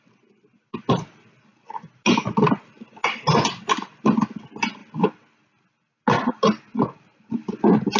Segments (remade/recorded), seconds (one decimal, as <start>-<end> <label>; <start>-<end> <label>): 0.0-8.0 recorded